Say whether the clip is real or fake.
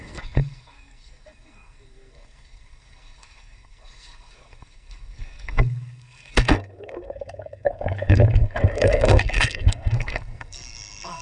fake